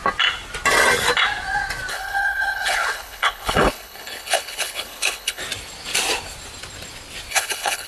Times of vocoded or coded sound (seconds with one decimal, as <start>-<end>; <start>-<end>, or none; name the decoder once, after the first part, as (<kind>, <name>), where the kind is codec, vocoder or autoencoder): 1.9-5.4 (codec, HILCodec); 7.3-7.9